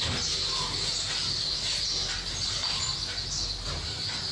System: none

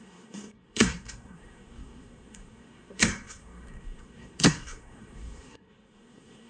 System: codec, SNAC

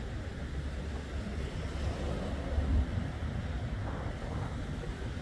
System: none